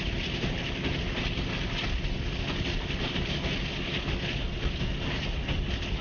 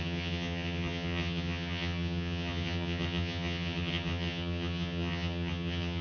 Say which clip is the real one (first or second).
first